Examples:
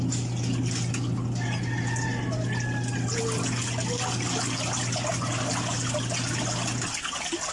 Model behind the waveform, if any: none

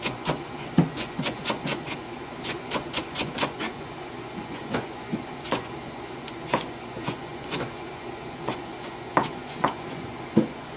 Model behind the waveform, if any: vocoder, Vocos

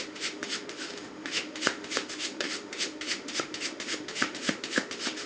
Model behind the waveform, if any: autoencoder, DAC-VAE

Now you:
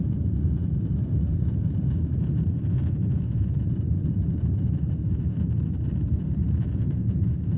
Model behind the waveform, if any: vocoder, BigVGAN v2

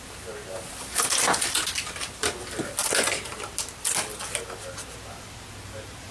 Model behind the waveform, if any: none